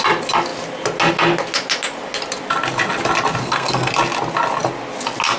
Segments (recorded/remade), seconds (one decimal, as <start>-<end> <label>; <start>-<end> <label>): 0.0-3.4 recorded; 3.4-3.9 remade; 3.9-5.4 recorded